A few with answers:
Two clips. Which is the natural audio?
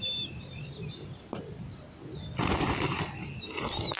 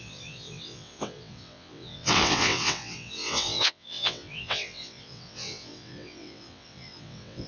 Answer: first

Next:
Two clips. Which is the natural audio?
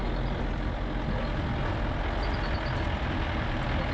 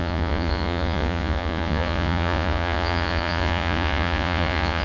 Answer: first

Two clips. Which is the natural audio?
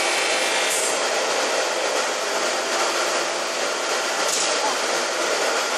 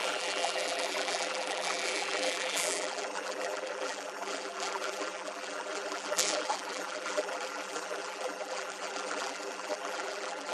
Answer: first